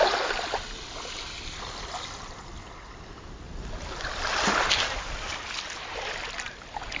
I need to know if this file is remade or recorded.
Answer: recorded